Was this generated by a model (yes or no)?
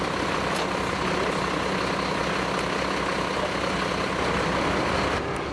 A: no